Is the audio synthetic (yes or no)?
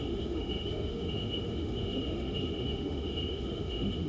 yes